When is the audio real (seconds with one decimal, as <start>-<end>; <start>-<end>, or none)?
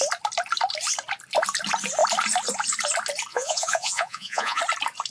0.0-3.3; 4.6-5.1